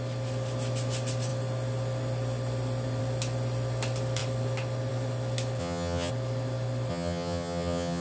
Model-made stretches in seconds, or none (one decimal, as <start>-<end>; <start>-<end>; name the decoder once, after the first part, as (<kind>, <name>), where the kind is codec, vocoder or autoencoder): 5.6-6.1 (vocoder, HiFi-GAN); 6.9-8.0